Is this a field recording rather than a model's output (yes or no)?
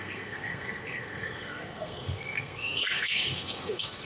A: no